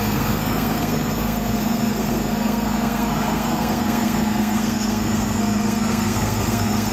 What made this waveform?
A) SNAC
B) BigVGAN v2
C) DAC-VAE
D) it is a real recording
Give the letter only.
A